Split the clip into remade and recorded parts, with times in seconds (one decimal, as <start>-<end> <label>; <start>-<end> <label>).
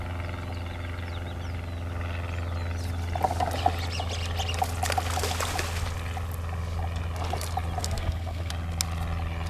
0.0-7.8 recorded; 7.8-8.5 remade; 8.5-9.5 recorded